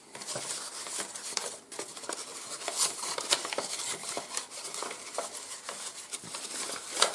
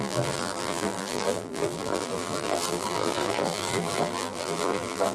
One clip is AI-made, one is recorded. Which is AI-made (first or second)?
second